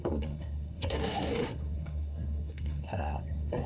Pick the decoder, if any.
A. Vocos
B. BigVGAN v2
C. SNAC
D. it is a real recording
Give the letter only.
C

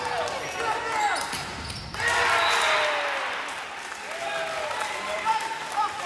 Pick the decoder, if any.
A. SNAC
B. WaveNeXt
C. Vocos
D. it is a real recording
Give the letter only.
D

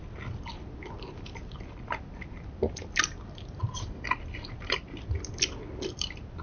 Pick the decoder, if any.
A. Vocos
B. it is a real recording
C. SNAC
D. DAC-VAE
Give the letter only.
B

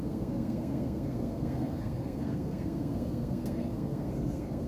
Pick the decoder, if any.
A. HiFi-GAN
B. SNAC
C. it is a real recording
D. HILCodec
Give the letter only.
B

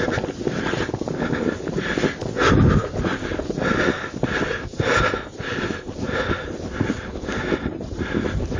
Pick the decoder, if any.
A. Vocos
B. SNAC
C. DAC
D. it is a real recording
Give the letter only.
D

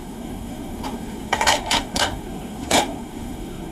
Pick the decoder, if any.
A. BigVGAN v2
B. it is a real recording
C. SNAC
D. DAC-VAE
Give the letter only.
C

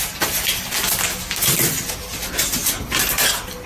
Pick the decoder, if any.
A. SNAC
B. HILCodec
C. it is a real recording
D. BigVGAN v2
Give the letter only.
C